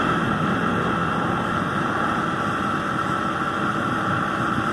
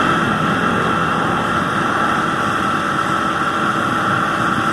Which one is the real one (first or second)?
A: second